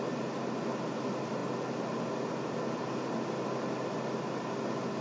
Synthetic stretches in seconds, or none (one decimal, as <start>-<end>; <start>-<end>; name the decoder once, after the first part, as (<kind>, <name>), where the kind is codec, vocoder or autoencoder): none